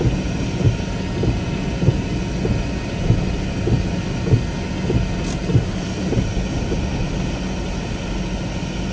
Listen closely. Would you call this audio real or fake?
real